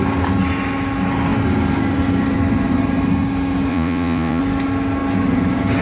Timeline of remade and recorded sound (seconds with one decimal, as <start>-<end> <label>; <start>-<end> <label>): 0.0-3.7 recorded; 3.7-4.4 remade; 4.4-5.8 recorded